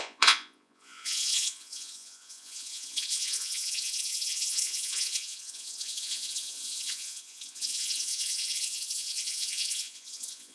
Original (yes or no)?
no